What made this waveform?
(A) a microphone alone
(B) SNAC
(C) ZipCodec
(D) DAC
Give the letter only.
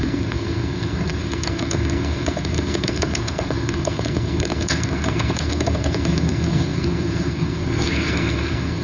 B